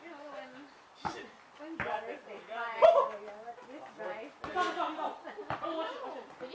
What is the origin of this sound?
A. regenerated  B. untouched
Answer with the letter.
B